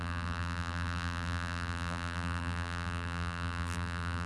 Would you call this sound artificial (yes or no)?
yes